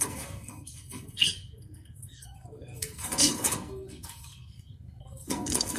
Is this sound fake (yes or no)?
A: yes